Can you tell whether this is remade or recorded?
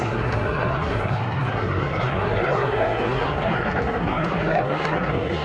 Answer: remade